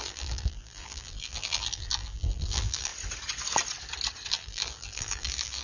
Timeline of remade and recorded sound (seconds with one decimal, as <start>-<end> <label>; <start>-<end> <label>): 0.0-2.9 remade; 2.9-4.3 recorded; 4.3-5.6 remade

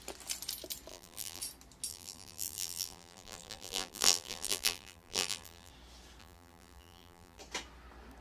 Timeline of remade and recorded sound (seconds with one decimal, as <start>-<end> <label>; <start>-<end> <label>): 0.0-0.9 recorded; 0.9-1.4 remade; 1.4-1.9 recorded; 1.9-5.7 remade; 5.7-6.2 recorded; 6.2-7.4 remade; 7.4-8.2 recorded

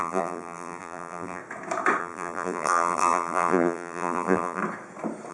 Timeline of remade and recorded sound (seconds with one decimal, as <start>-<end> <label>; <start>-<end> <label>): 0.0-1.4 remade; 1.4-2.0 recorded; 2.0-4.6 remade; 4.6-5.3 recorded

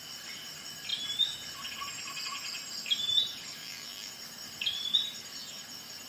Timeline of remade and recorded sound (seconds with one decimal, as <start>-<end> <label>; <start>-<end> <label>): 0.0-3.6 recorded; 3.6-4.1 remade; 4.1-6.1 recorded

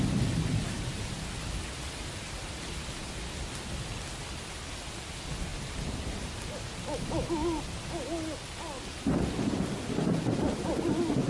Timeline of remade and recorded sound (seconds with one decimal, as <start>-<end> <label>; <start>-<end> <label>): 0.0-5.5 recorded; 5.5-6.3 remade; 6.3-11.3 recorded